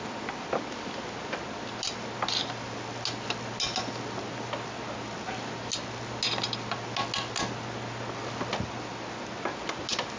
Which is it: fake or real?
real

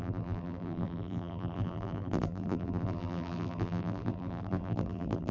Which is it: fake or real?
fake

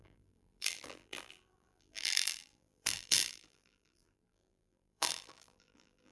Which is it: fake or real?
fake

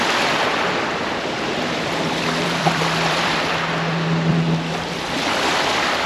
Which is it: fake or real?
fake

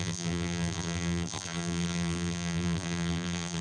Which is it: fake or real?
fake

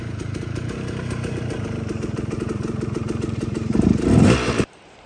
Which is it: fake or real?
fake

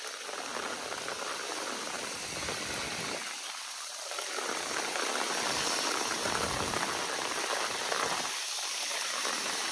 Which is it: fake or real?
fake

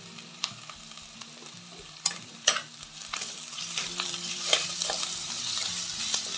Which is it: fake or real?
fake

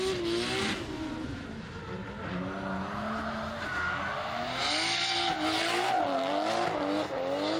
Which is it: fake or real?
real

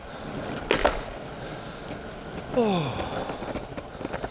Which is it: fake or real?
real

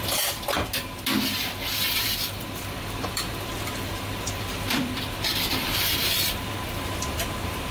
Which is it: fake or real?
fake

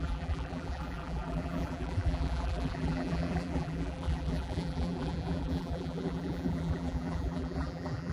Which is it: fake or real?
fake